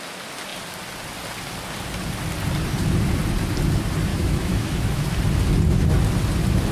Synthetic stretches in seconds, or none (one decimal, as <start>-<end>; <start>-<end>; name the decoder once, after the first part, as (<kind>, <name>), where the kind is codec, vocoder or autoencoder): 4.1-5.0 (autoencoder, DAC-VAE)